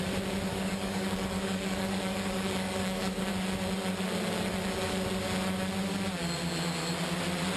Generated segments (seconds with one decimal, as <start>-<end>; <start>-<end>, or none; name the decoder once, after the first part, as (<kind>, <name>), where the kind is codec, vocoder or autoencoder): 0.5-3.3 (codec, DAC)

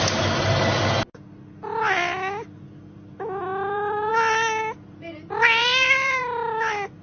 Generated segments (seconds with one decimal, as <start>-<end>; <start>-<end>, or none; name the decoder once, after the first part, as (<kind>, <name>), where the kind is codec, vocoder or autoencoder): 3.4-4.1 (vocoder, BigVGAN v2); 5.6-6.2

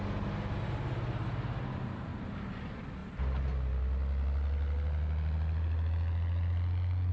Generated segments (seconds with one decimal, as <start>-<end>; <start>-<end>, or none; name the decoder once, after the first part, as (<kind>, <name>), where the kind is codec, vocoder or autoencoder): none

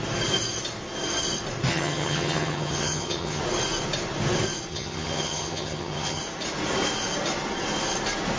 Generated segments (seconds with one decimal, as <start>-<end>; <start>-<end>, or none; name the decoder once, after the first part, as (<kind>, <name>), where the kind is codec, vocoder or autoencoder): 1.7-3.4 (vocoder, HiFi-GAN); 4.7-6.2